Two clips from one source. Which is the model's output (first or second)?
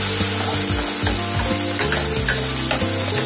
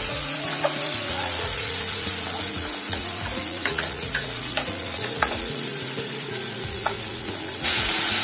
second